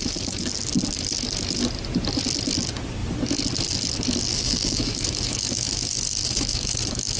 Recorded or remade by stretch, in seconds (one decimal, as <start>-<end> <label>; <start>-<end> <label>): 0.0-4.3 recorded; 4.3-7.2 remade